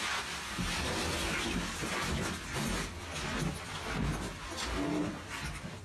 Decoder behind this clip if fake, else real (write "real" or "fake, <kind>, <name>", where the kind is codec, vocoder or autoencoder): real